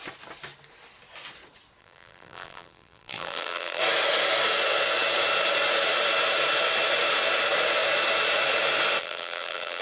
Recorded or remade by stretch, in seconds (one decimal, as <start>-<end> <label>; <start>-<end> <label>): 0.0-1.8 recorded; 1.8-3.8 remade; 3.8-9.0 recorded; 9.0-9.8 remade